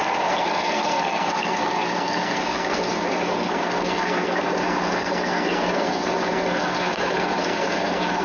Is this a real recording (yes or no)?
no